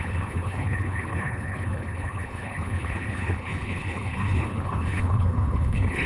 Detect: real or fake fake